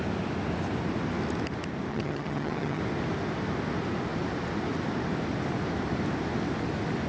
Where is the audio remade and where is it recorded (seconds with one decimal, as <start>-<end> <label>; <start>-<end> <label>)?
0.0-1.9 recorded; 1.9-2.8 remade; 2.8-7.1 recorded